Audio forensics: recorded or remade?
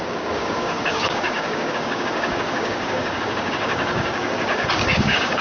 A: remade